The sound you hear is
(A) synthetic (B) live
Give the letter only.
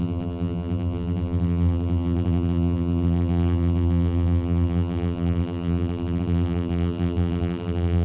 A